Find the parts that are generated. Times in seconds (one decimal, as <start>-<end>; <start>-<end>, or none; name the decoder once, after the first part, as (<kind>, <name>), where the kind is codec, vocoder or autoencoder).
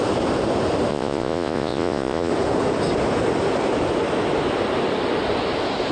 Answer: 0.9-2.3 (vocoder, Vocos)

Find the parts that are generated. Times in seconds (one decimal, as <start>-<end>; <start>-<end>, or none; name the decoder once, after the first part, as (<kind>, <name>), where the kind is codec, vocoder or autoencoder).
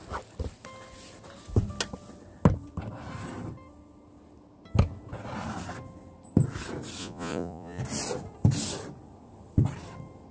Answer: 7.0-7.8 (vocoder, Vocos)